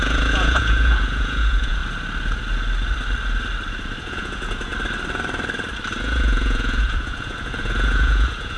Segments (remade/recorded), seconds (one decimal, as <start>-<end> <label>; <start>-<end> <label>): 0.0-1.8 remade; 1.8-4.0 recorded; 4.0-4.7 remade; 4.7-6.0 recorded; 6.0-8.6 remade